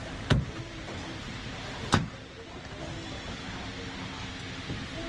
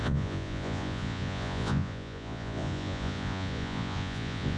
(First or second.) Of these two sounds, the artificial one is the second